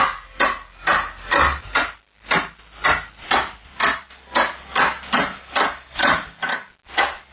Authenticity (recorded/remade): recorded